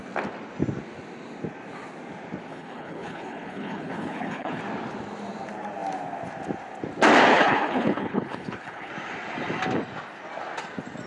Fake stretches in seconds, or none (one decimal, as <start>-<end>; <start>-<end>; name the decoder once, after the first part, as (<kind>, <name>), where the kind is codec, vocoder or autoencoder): 2.5-4.6 (codec, HILCodec); 7.3-8.9